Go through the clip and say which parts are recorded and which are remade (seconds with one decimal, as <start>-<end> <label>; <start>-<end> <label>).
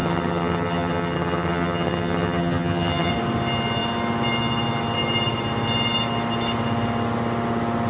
0.0-3.1 remade; 3.1-7.9 recorded